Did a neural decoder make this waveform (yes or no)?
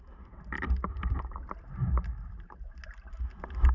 no